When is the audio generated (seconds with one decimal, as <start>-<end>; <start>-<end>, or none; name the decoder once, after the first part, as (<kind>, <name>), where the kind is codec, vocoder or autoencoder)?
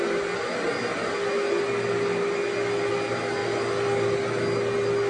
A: none